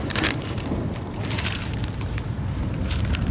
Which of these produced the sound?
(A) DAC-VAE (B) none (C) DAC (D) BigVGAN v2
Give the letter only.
D